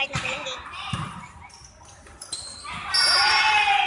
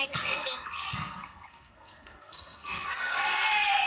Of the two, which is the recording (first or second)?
first